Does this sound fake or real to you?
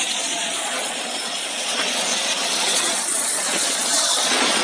fake